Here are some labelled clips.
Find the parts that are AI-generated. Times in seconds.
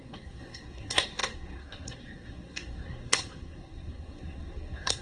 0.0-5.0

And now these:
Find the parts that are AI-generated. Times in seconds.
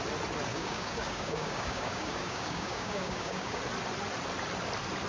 0.5-3.6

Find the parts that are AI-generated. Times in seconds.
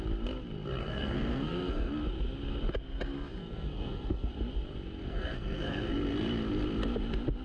0.8-1.9; 3.4-4.3; 5.0-5.9